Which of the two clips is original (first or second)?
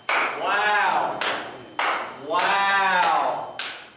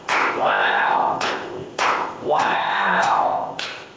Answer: first